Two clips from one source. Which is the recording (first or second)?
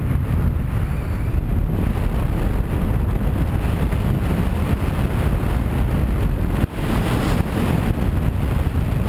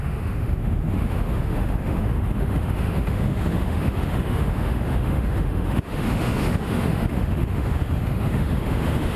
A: first